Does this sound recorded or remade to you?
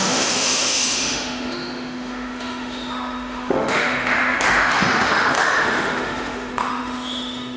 remade